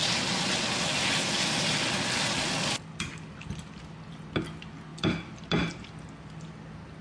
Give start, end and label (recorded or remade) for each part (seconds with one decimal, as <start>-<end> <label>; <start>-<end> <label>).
0.0-7.0 recorded